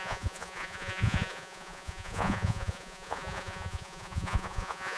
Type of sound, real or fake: fake